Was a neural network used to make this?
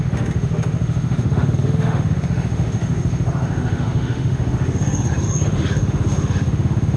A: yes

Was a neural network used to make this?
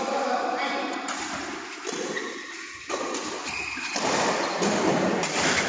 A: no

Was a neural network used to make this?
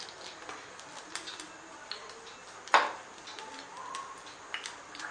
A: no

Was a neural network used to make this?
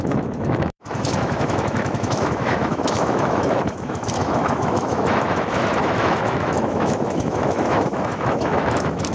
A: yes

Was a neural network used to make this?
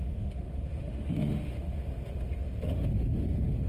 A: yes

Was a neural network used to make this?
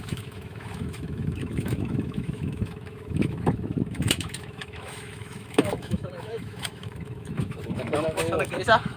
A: yes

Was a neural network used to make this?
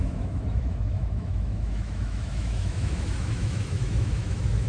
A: yes